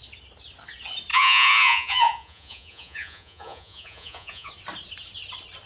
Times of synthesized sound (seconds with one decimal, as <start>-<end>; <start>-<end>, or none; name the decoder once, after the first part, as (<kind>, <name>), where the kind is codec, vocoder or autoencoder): 1.1-4.5 (vocoder, Vocos)